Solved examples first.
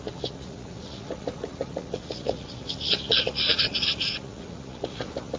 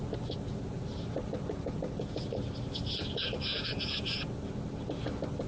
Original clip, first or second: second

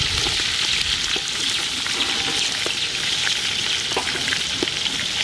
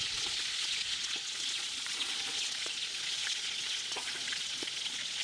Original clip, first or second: first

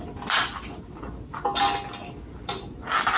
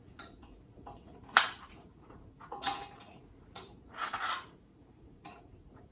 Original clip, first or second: first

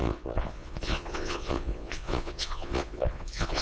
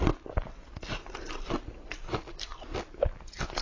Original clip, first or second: second